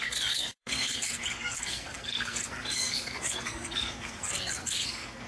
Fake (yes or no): yes